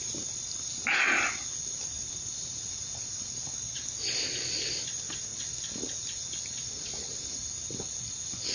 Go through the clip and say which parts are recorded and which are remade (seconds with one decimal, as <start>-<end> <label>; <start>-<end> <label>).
0.0-8.5 recorded